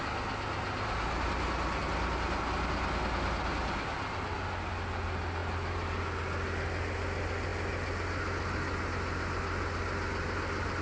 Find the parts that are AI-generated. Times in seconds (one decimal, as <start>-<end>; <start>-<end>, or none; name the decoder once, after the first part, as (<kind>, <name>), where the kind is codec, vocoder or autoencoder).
none